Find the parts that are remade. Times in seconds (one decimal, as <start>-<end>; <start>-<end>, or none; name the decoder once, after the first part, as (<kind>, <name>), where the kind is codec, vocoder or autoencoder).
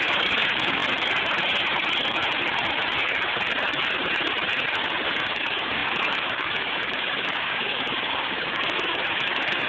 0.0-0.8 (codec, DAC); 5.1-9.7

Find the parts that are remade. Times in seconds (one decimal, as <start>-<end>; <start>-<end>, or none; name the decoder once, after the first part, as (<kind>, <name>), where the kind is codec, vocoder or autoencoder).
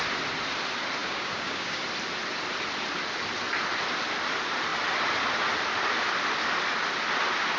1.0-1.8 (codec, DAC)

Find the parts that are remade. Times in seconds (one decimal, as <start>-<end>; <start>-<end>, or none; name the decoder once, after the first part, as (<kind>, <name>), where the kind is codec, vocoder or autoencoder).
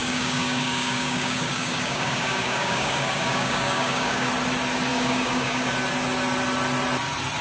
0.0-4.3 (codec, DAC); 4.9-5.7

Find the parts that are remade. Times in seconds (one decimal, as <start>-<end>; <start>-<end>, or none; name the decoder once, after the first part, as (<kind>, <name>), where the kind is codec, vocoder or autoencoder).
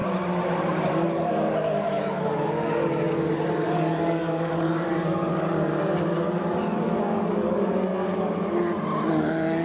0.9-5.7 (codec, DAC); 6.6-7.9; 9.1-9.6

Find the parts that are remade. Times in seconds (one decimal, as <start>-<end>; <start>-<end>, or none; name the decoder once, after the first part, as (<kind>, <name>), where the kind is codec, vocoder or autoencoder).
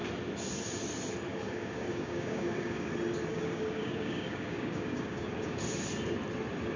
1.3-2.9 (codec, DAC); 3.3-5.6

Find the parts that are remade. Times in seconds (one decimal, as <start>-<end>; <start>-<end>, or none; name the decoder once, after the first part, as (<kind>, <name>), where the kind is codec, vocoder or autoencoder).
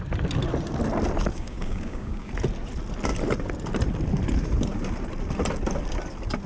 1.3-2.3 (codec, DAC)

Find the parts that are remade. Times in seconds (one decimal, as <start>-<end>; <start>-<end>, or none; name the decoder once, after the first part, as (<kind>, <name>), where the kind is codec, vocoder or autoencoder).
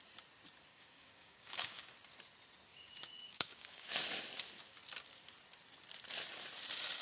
0.7-1.9 (codec, DAC); 2.7-4.0